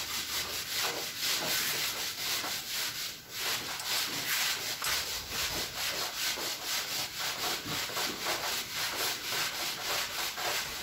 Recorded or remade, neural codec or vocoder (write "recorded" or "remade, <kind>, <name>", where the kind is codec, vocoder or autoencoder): recorded